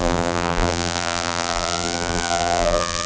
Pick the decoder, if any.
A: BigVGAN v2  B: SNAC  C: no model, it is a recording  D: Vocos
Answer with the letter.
A